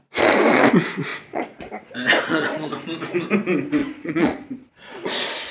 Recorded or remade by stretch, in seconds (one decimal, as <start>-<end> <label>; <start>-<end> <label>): 0.0-1.1 recorded; 1.1-1.7 remade; 1.7-2.1 recorded; 2.1-2.7 remade; 2.7-3.8 recorded; 3.8-5.1 remade; 5.1-5.5 recorded